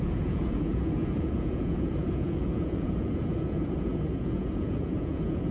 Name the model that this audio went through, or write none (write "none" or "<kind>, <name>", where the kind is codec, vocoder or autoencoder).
vocoder, Vocos